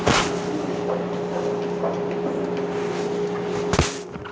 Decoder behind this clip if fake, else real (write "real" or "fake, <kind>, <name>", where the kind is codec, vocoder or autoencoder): real